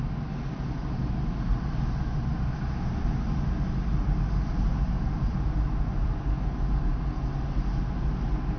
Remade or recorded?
recorded